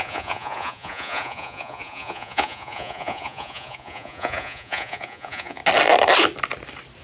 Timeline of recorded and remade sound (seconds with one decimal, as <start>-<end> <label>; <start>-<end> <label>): 0.0-5.6 remade; 5.6-7.0 recorded